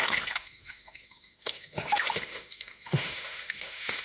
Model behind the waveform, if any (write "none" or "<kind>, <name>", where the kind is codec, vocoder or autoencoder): autoencoder, DAC-VAE